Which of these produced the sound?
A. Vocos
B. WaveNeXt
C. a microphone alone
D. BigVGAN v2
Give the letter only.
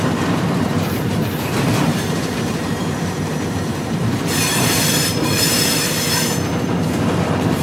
D